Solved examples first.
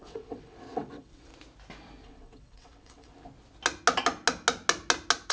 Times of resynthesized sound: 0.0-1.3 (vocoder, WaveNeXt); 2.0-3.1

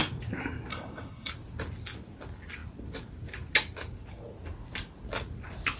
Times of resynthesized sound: 0.7-1.3 (codec, HILCodec)

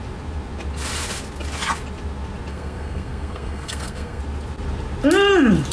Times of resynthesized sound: 2.5-4.2 (codec, SNAC)

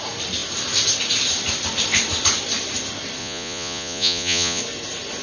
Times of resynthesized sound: 3.2-4.6 (vocoder, Vocos)

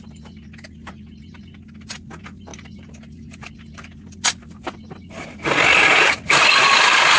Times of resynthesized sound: none